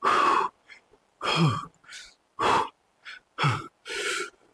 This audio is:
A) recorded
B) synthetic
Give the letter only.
A